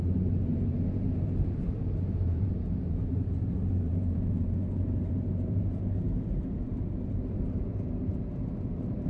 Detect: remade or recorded remade